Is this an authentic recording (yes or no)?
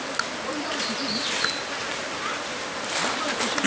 yes